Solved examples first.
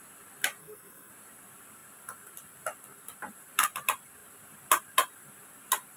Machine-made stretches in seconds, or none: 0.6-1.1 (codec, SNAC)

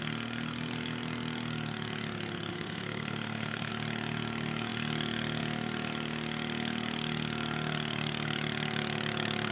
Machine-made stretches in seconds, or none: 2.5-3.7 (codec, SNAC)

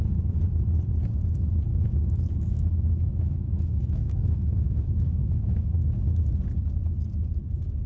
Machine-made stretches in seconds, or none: 1.7-6.3 (autoencoder, DAC-VAE)

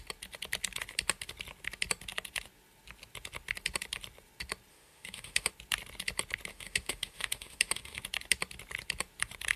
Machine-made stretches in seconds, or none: 4.7-5.5 (autoencoder, DAC-VAE); 6.5-8.0

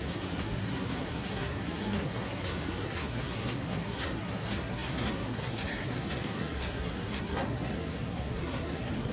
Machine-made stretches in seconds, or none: 0.0-9.1 (codec, SNAC)

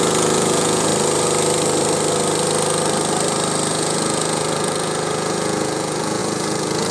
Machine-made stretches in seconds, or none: 0.0-0.9 (vocoder, Vocos); 3.7-6.9

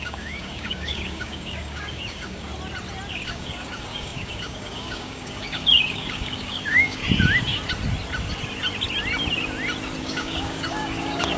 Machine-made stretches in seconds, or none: 0.0-2.5 (codec, DAC); 3.1-7.0; 10.0-11.4

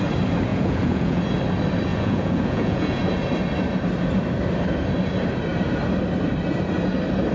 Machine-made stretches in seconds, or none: 0.5-1.2 (vocoder, Vocos); 1.9-3.0